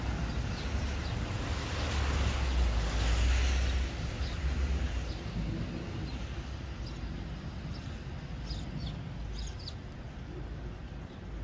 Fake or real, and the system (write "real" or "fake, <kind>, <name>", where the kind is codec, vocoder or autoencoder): real